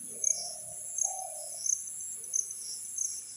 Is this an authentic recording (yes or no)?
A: yes